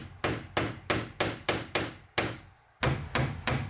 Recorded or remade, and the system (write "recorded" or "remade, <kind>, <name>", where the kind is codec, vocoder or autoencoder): recorded